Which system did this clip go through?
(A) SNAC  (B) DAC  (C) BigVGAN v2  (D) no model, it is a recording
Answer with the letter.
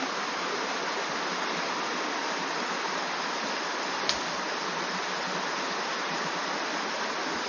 D